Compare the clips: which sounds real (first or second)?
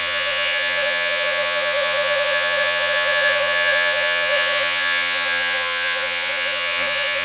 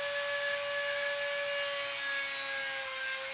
second